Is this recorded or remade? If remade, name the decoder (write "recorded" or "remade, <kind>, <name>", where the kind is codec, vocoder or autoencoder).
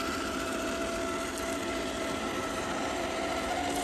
recorded